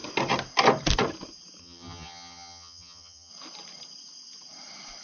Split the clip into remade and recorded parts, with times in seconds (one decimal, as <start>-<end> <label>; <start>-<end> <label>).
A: 0.0-1.6 recorded; 1.6-3.3 remade; 3.3-5.0 recorded